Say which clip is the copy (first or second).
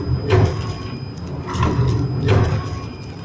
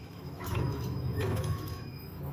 second